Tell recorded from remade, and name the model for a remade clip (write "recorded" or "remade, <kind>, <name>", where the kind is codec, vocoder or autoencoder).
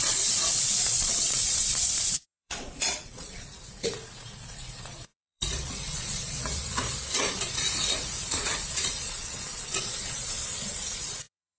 remade, vocoder, Vocos